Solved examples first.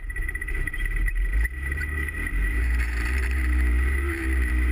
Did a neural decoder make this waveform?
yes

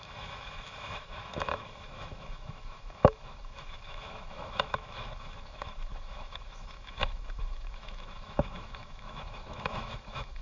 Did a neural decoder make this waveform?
yes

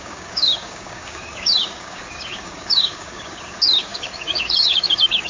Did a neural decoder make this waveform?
yes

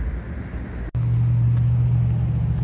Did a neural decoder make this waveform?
no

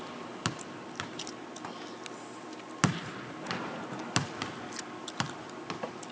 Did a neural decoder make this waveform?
no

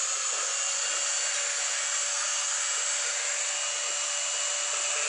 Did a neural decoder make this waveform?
no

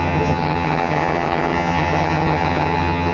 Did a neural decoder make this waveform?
yes